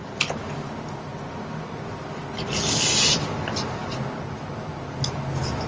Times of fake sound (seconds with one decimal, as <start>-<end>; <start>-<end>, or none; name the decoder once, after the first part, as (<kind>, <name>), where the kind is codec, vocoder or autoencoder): 0.0-1.1 (vocoder, BigVGAN v2); 2.7-3.8; 4.5-5.7